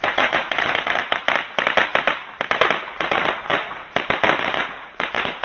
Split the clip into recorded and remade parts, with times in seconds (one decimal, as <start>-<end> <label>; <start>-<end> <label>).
0.0-1.0 remade; 1.0-2.9 recorded; 2.9-3.8 remade; 3.8-4.4 recorded; 4.4-5.4 remade